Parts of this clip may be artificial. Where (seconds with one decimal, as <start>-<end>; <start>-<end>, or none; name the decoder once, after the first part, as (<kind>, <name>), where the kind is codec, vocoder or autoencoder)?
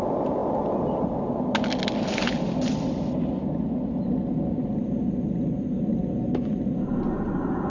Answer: none